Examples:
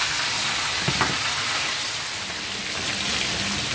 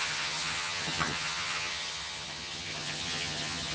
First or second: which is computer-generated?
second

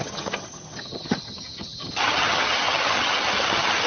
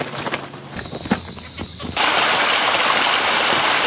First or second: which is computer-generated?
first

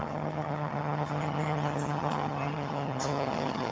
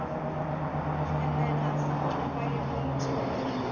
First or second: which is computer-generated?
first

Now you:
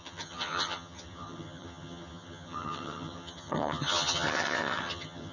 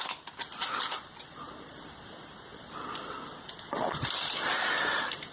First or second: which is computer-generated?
first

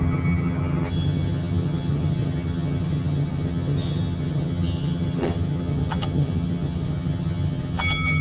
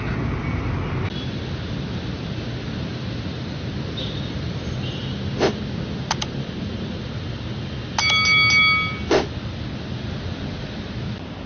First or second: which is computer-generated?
first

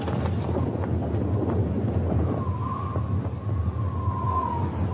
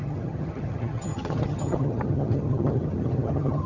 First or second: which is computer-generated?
second